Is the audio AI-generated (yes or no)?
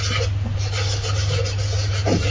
no